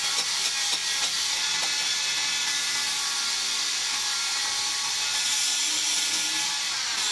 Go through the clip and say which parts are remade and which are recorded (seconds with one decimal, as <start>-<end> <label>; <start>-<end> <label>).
0.0-7.1 recorded